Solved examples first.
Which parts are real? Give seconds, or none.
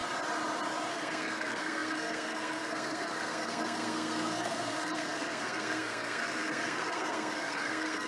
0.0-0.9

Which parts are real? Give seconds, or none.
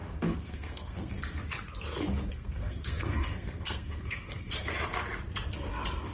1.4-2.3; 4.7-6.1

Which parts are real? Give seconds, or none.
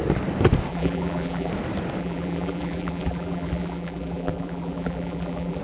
0.0-0.7; 1.5-2.0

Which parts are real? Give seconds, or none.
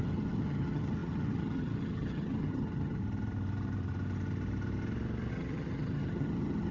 3.0-5.3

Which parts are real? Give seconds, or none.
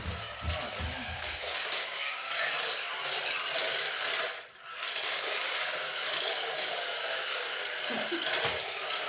0.0-1.0; 2.5-4.7; 7.6-9.1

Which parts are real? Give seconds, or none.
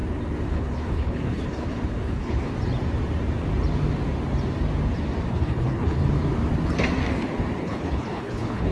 0.0-0.5; 2.5-5.3; 6.0-7.6